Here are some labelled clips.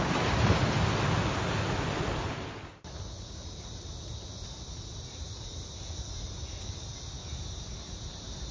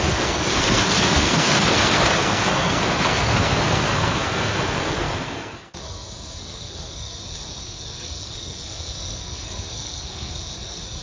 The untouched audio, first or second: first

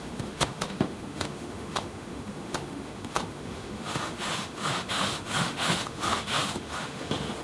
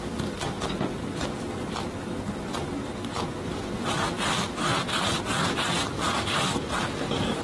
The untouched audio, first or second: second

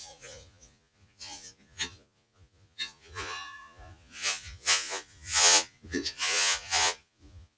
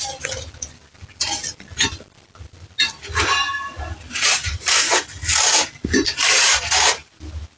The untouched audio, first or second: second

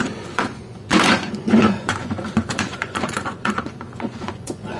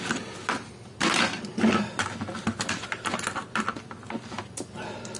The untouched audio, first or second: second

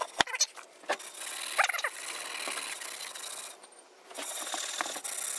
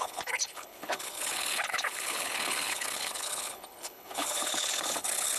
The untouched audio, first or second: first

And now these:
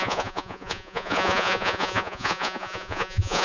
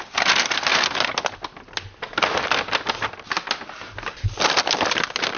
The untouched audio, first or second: second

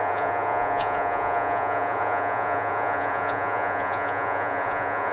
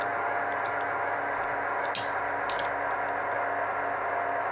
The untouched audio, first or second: second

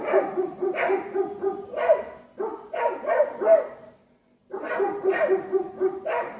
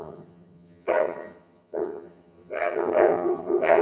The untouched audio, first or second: first